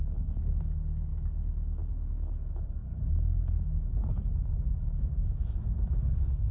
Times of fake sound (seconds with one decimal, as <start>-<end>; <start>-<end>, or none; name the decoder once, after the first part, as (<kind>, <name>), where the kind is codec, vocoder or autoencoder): 0.0-1.1 (autoencoder, DAC-VAE); 1.9-2.8; 4.8-6.5